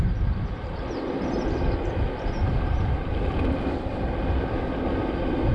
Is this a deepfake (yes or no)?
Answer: no